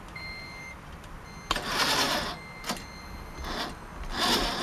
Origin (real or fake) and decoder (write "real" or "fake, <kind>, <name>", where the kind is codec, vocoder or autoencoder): real